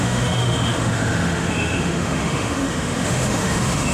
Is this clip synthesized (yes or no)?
yes